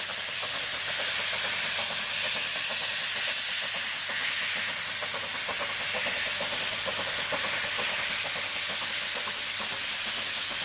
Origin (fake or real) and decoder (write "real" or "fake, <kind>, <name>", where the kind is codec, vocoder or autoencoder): real